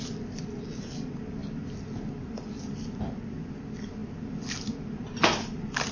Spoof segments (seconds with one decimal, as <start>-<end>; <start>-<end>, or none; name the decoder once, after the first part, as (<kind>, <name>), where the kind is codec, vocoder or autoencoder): none